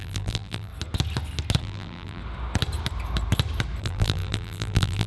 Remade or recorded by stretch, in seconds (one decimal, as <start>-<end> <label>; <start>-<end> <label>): 0.0-0.7 remade; 0.7-1.6 recorded; 1.6-2.2 remade; 2.2-3.8 recorded; 3.8-5.1 remade